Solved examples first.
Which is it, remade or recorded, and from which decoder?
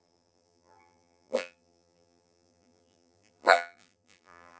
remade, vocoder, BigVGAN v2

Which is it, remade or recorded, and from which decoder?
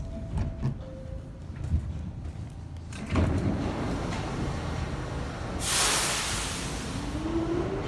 recorded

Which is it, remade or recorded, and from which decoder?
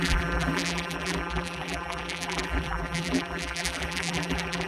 remade, vocoder, BigVGAN v2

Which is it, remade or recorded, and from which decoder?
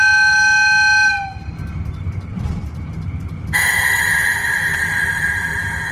recorded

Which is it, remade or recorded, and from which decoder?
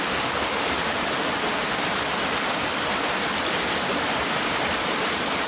recorded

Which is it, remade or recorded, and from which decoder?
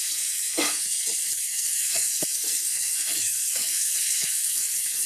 remade, codec, SNAC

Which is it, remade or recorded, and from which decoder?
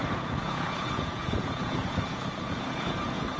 remade, vocoder, Vocos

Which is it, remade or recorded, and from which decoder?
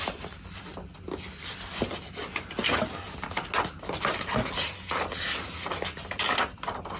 recorded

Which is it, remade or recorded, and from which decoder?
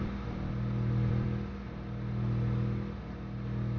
remade, vocoder, BigVGAN v2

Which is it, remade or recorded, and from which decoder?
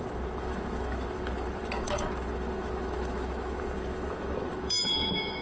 remade, autoencoder, DAC-VAE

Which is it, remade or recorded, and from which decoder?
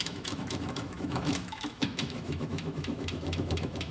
remade, autoencoder, DAC-VAE